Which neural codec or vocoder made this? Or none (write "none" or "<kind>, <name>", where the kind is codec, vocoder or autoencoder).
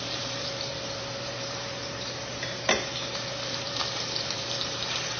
vocoder, BigVGAN v2